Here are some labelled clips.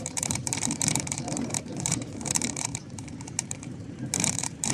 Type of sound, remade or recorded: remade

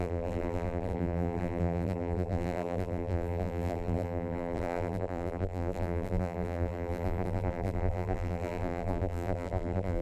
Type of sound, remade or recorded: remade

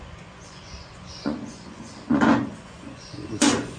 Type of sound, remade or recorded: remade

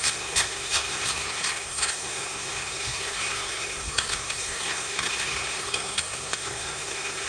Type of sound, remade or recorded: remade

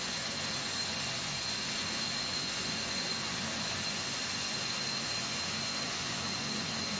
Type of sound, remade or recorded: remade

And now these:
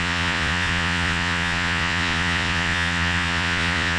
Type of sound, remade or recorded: remade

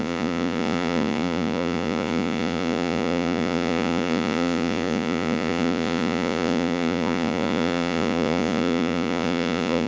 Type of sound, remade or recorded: remade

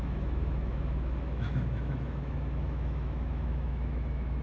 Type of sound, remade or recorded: remade